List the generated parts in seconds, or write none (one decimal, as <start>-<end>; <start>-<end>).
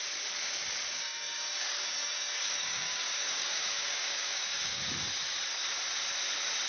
0.9-4.9